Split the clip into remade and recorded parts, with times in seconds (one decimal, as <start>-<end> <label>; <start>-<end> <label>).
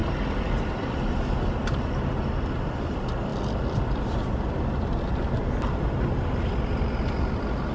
0.0-7.7 recorded